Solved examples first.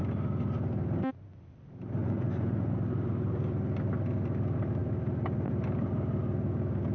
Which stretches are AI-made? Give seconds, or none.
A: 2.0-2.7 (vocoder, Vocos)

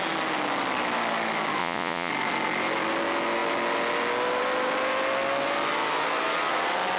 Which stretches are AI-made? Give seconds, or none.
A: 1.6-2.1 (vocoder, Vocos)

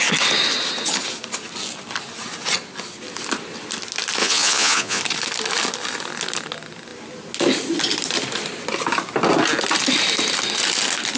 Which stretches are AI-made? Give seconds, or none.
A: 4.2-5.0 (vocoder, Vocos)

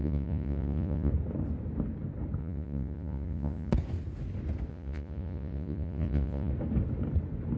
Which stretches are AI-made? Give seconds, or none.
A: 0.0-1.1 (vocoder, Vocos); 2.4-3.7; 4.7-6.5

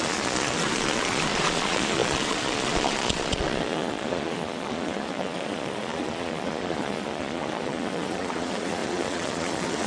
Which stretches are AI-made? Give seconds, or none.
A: 0.0-9.9 (vocoder, Vocos)

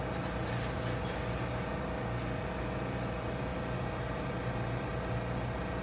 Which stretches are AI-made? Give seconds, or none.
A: none

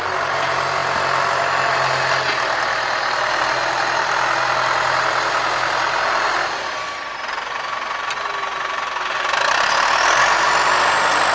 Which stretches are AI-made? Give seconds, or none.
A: none

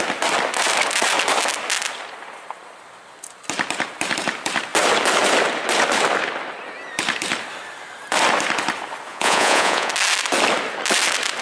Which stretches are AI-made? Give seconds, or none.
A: 9.1-9.9 (vocoder, Vocos)